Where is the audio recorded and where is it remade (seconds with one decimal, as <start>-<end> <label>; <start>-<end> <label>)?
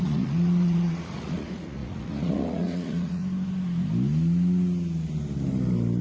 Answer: 0.0-3.2 remade; 3.2-6.0 recorded